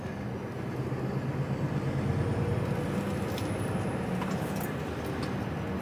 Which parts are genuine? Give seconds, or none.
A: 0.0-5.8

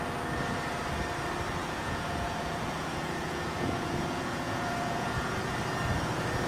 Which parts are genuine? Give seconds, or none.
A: 0.0-1.6; 5.5-6.5

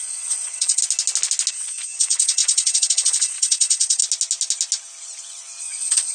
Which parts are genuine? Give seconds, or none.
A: 0.8-1.5; 4.0-5.6

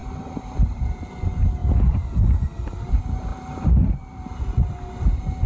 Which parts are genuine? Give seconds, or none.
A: 1.1-3.3; 4.6-5.5

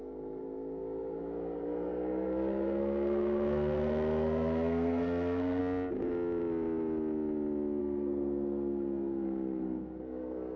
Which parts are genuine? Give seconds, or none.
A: 5.6-7.8